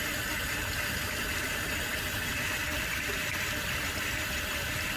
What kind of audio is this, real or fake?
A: fake